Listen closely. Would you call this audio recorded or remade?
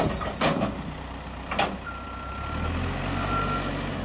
recorded